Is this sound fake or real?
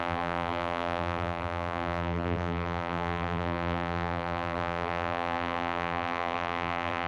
fake